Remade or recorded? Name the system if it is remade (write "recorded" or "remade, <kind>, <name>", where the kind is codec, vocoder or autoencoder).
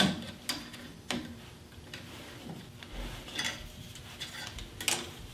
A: recorded